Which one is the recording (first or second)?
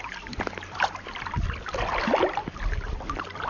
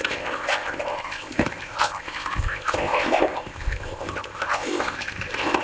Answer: first